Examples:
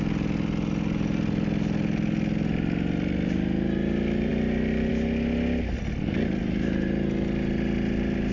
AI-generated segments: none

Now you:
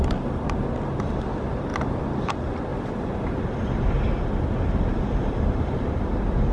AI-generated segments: 2.7-6.0 (vocoder, BigVGAN v2)

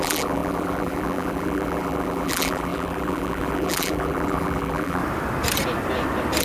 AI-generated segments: 0.0-5.0 (vocoder, BigVGAN v2)

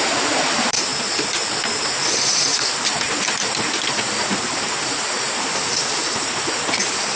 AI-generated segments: 0.0-0.9 (vocoder, BigVGAN v2); 2.1-7.2

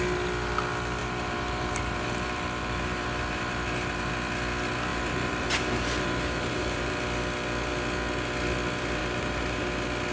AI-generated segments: 1.0-4.1 (vocoder, BigVGAN v2); 4.9-6.9; 9.0-9.6

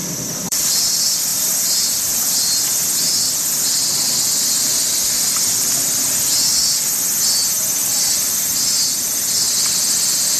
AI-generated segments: 0.0-0.9 (vocoder, BigVGAN v2); 1.3-5.3; 7.8-9.4

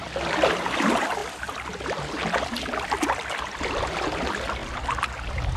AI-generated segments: none